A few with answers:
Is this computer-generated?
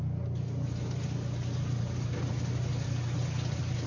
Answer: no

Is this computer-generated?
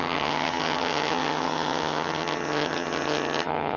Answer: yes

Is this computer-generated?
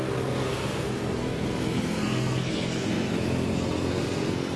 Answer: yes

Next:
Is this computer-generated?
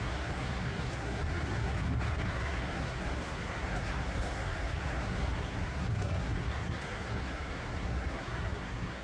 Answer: yes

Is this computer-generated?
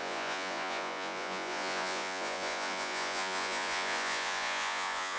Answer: yes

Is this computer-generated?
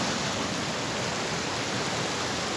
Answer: no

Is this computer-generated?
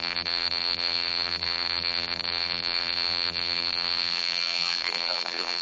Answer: yes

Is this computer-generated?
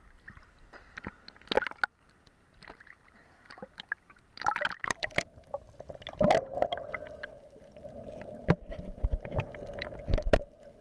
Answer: no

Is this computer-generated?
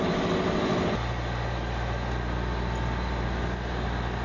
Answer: no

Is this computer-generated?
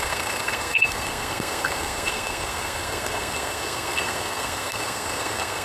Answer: yes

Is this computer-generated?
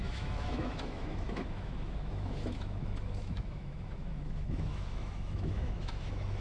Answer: yes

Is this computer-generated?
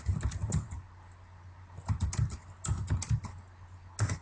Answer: no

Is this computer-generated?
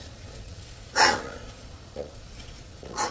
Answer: yes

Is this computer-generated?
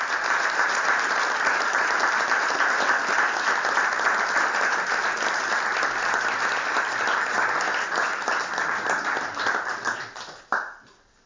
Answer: no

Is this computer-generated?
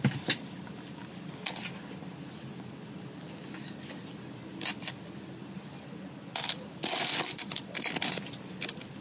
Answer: no